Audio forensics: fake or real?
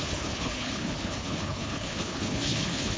fake